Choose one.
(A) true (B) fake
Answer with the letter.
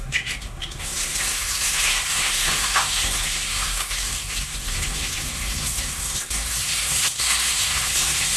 B